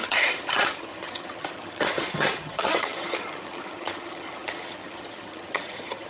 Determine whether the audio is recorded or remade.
remade